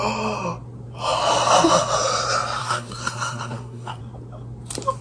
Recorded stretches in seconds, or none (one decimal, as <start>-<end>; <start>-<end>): 0.0-2.6; 4.0-5.0